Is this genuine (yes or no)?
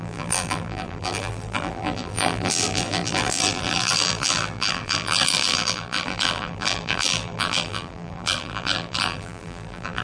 no